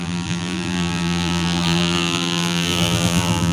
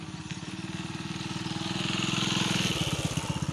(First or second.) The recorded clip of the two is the second